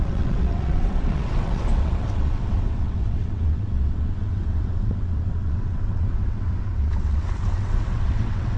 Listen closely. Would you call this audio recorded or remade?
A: remade